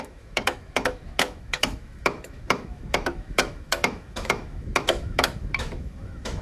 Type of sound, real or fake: fake